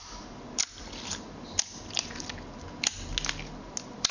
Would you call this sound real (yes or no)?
yes